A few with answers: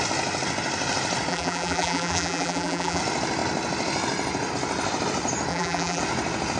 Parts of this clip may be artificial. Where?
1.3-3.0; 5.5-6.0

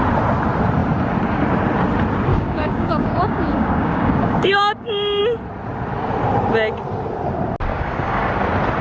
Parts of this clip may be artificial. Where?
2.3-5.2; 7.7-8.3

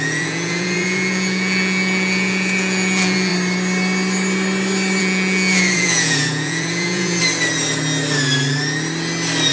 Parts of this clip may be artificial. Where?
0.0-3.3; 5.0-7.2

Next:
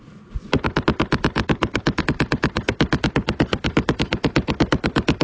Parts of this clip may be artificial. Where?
1.4-2.0